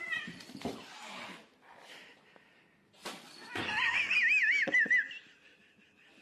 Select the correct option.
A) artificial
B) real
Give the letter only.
B